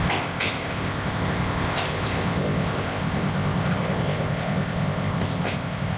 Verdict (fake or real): fake